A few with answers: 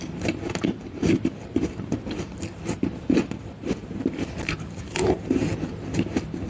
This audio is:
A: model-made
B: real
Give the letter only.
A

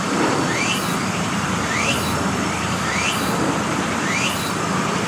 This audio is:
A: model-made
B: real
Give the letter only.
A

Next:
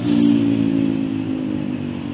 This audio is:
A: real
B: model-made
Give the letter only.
A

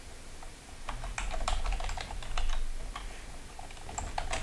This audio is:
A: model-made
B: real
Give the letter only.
B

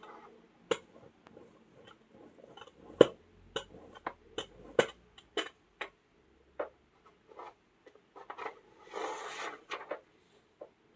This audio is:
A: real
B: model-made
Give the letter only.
A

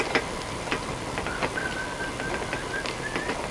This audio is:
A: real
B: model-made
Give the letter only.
A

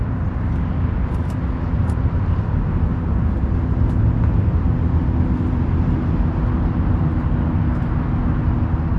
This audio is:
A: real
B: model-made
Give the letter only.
A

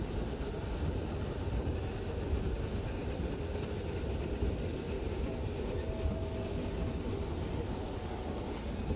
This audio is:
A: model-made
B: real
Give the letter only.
B